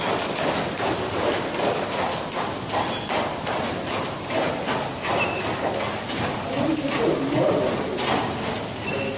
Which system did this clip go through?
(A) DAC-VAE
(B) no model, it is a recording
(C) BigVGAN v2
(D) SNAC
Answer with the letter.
B